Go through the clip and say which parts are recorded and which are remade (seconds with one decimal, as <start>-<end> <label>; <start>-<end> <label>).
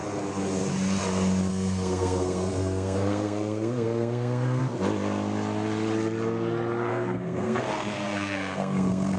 0.0-1.5 recorded; 1.5-4.6 remade; 4.6-6.9 recorded; 6.9-9.2 remade